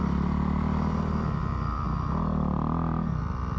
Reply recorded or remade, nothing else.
recorded